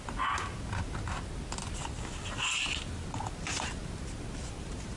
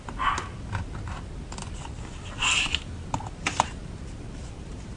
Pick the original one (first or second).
first